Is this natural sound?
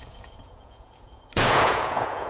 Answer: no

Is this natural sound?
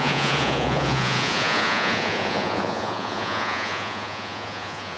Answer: no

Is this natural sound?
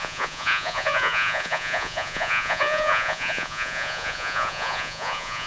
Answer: no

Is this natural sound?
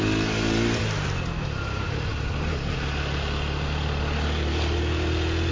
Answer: yes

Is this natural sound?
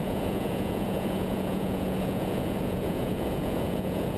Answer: no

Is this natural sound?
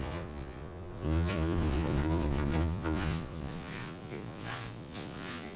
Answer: no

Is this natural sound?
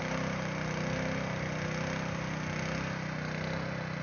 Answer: yes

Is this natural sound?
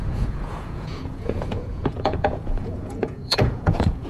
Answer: no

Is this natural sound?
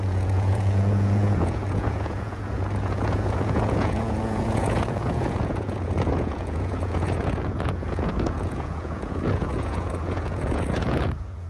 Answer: no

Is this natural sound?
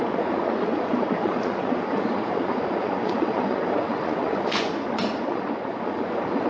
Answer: no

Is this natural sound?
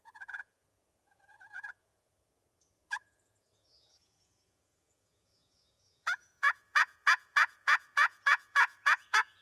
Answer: no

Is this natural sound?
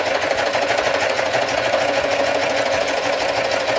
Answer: no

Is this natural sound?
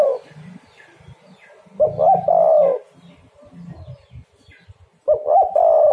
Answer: yes